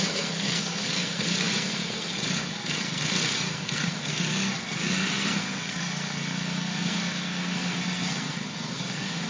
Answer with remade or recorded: remade